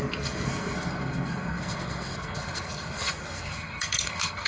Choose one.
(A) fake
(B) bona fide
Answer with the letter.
A